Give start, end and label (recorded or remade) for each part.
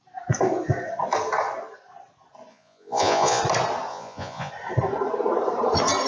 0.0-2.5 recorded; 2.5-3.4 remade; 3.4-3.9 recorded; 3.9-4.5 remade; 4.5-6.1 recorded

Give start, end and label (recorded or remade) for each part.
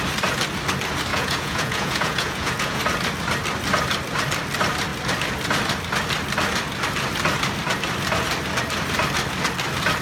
0.0-1.1 recorded; 1.1-2.8 remade; 2.8-10.0 recorded